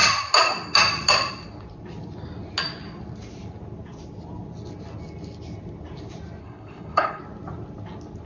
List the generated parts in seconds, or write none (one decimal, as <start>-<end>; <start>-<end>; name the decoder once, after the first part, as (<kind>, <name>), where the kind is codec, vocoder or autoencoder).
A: 6.4-7.2 (codec, HILCodec)